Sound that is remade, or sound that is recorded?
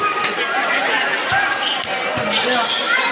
recorded